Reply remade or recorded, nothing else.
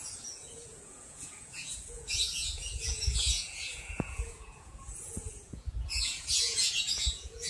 remade